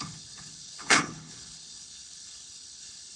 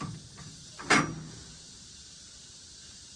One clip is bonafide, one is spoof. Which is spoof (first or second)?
first